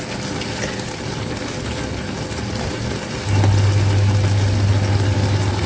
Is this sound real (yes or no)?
yes